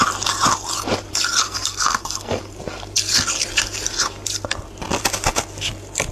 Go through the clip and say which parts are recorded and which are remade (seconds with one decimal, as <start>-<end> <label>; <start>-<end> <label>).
0.0-1.4 recorded; 1.4-2.4 remade; 2.4-6.1 recorded